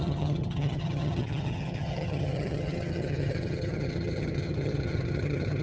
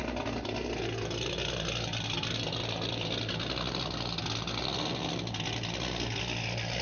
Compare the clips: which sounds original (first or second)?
second